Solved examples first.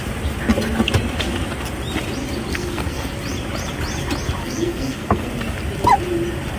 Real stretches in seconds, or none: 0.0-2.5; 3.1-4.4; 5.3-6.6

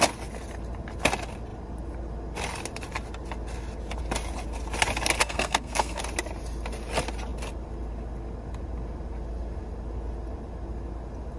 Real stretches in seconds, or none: 0.0-5.2; 6.0-11.4

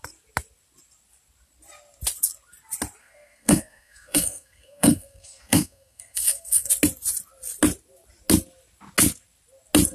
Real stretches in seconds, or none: 0.0-3.0; 6.7-9.9